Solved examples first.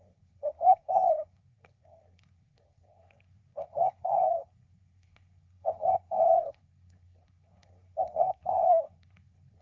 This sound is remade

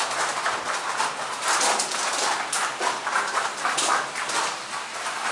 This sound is recorded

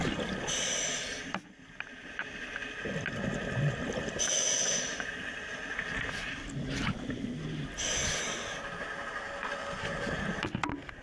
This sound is recorded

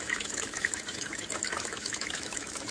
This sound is remade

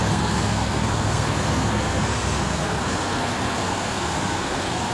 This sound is remade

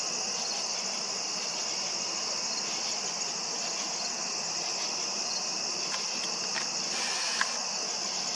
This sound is recorded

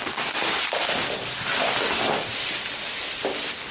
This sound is remade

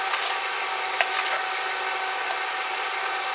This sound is recorded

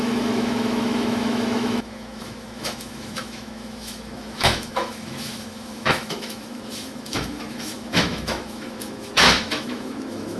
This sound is remade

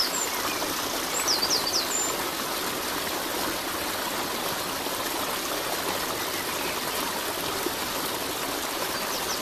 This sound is recorded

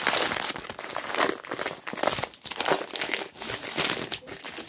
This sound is recorded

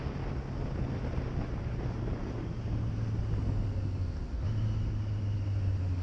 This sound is recorded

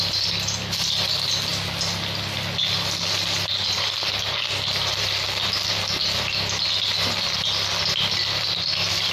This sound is recorded